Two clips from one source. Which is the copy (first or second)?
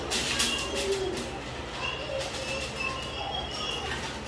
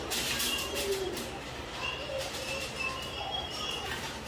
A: second